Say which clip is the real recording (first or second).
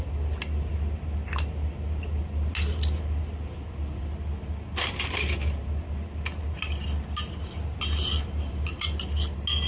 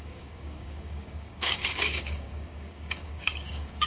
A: first